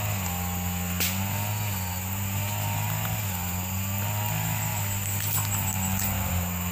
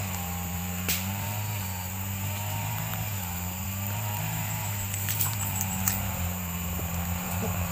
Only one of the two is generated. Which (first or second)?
second